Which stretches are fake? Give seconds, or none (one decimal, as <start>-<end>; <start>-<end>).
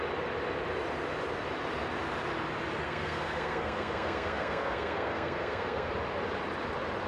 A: 2.8-5.9